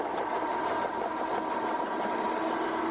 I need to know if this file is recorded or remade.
recorded